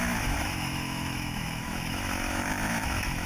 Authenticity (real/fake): fake